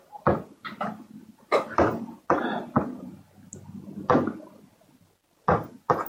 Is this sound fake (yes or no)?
no